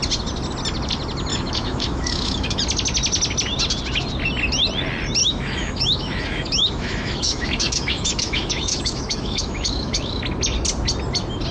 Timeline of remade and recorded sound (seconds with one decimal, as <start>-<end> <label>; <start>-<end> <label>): 0.0-1.3 recorded; 1.3-2.6 remade; 2.6-5.2 recorded; 5.2-10.2 remade; 10.2-11.5 recorded